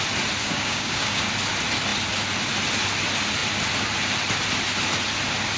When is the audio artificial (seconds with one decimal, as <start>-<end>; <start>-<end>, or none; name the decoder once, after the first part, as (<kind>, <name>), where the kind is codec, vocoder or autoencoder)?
0.4-1.2 (codec, DAC)